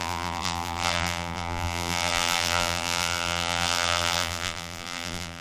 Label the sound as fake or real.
fake